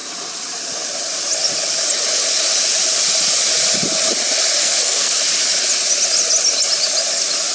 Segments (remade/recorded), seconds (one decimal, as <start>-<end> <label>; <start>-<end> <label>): 0.0-4.6 recorded; 4.6-5.2 remade; 5.2-7.5 recorded